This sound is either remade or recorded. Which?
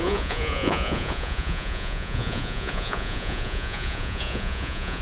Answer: remade